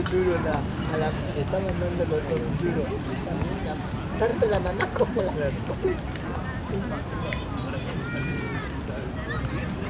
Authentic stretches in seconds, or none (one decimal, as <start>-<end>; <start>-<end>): 0.0-4.3; 5.2-9.9